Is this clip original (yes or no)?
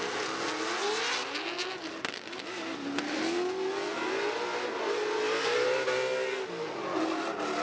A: yes